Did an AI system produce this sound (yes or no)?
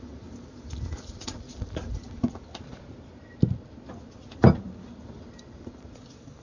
no